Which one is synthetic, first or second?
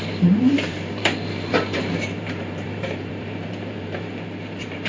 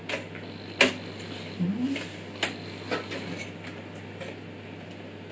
first